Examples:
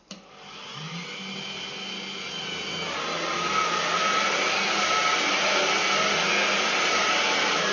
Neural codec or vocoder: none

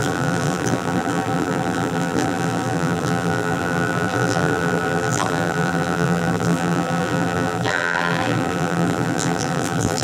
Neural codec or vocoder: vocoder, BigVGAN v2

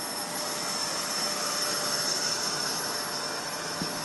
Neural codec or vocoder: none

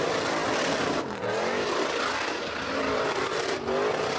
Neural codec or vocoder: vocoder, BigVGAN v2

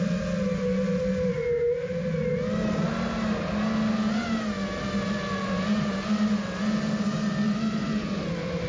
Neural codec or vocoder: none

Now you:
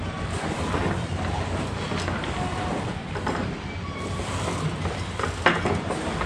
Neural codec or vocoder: none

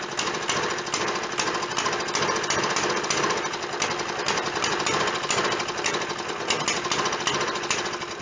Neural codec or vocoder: none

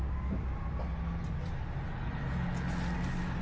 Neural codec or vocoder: none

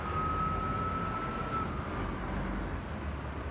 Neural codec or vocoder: none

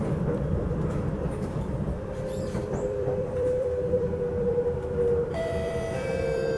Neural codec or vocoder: vocoder, BigVGAN v2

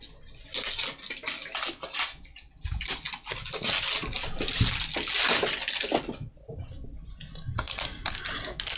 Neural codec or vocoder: none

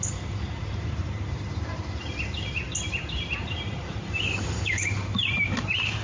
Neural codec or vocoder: vocoder, BigVGAN v2